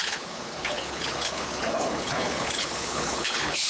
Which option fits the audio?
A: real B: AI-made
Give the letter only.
B